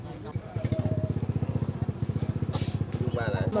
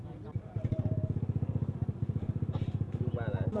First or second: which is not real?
second